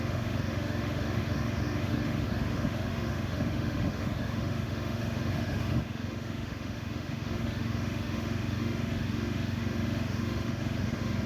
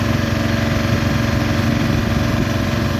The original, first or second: second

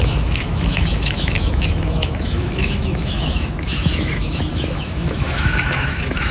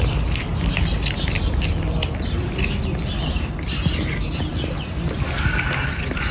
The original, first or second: second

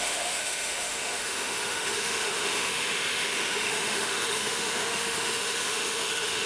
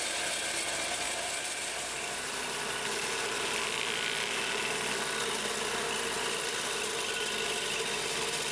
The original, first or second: second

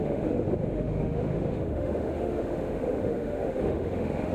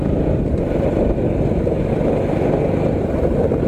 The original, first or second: second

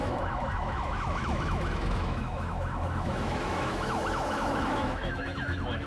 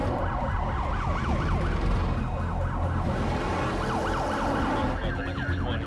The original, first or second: second